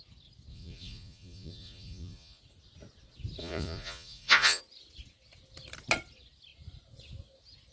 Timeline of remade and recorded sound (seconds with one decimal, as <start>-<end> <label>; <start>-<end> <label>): 0.0-0.5 recorded; 0.5-2.4 remade; 2.4-3.4 recorded; 3.4-4.6 remade; 4.6-7.7 recorded